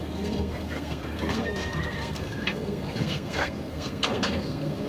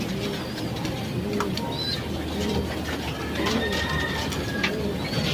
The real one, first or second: second